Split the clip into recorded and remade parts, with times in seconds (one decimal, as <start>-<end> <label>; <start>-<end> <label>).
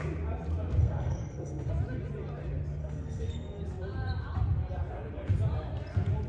0.0-0.8 recorded; 0.8-1.7 remade; 1.7-2.8 recorded; 2.8-3.6 remade; 3.6-6.3 recorded